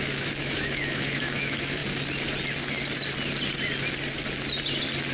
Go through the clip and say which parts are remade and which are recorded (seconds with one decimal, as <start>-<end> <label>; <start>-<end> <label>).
0.0-1.8 remade; 1.8-5.1 recorded